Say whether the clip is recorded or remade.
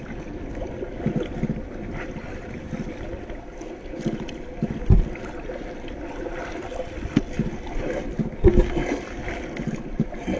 recorded